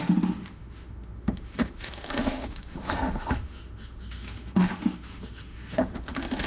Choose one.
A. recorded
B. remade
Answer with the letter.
B